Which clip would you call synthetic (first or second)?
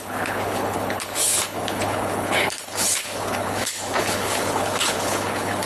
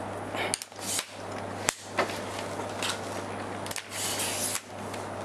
first